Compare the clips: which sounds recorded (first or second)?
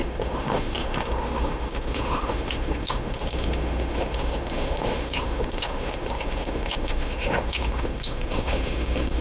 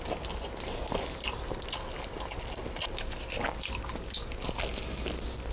second